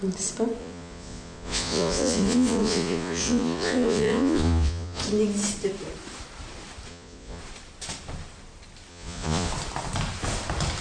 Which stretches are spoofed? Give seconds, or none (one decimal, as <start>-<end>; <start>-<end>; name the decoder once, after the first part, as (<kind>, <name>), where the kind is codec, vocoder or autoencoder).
0.6-5.0 (vocoder, Vocos); 6.9-7.4; 8.9-9.5